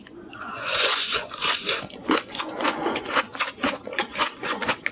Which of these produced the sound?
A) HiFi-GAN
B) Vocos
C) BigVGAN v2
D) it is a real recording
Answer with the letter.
B